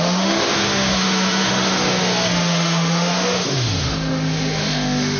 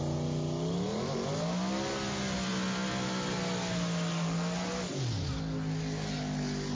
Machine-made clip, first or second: first